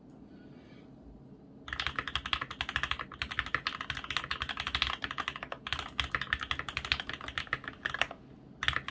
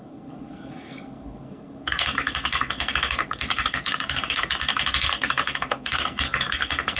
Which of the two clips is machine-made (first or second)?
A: second